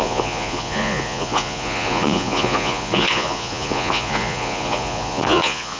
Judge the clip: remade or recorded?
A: remade